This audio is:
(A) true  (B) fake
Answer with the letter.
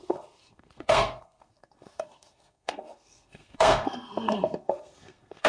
B